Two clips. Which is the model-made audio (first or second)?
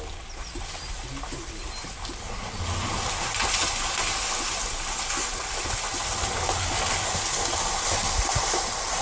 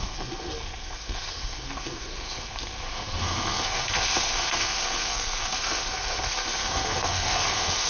second